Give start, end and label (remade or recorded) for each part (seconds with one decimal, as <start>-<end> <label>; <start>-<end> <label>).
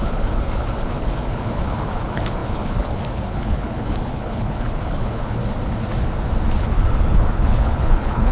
0.0-5.4 remade; 5.4-6.5 recorded; 6.5-8.3 remade